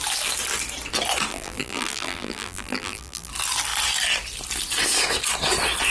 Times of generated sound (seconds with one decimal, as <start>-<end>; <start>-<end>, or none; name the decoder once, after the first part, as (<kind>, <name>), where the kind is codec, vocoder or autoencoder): 1.3-3.3 (vocoder, BigVGAN v2)

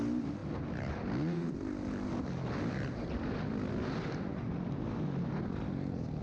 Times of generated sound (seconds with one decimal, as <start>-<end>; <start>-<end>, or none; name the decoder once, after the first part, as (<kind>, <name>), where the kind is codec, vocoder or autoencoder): none

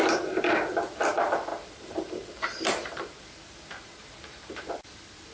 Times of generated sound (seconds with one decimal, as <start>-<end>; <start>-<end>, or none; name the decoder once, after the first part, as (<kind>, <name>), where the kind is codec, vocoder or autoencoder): 1.5-4.7 (vocoder, BigVGAN v2)